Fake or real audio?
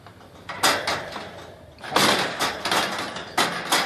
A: real